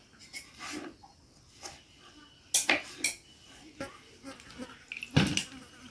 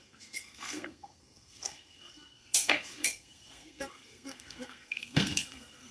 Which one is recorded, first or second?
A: first